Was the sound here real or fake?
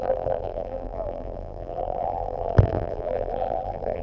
fake